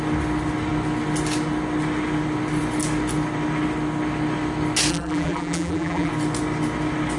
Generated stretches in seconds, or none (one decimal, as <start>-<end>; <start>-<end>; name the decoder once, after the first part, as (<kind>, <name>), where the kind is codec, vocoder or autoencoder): 4.9-6.1 (vocoder, BigVGAN v2)